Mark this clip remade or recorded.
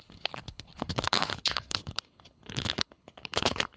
remade